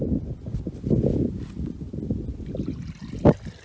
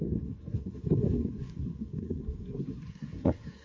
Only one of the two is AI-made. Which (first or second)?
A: second